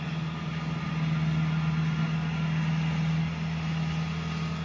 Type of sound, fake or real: real